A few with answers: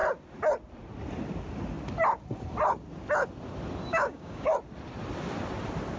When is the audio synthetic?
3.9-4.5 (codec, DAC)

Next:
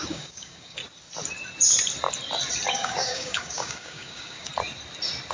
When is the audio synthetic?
0.0-0.8 (codec, DAC); 2.7-4.5

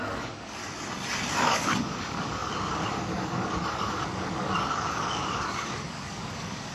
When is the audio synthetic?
0.0-0.6 (codec, DAC); 1.4-6.7

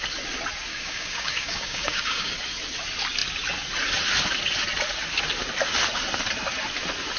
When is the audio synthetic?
0.7-2.3 (codec, DAC)

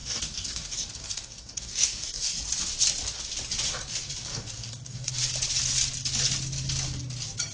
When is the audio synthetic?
0.0-2.4 (codec, DAC); 4.3-5.1

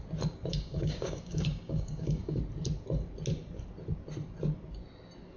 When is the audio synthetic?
0.5-2.4 (codec, DAC)

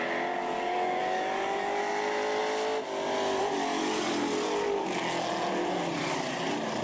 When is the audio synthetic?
0.4-1.8 (codec, DAC)